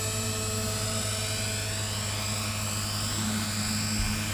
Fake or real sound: real